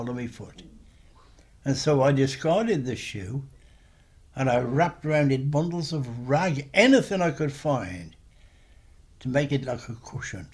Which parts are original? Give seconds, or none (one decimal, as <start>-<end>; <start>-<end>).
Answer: 0.0-10.5